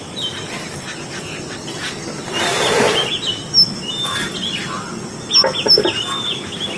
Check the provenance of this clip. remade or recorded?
recorded